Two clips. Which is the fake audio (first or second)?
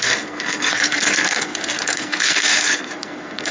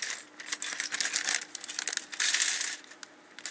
first